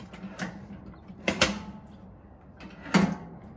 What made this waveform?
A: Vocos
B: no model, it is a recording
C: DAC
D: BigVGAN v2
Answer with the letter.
B